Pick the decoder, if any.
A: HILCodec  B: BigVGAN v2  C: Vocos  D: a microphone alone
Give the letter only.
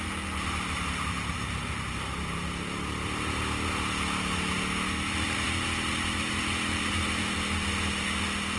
D